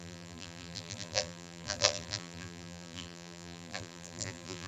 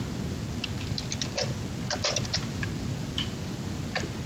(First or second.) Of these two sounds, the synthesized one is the first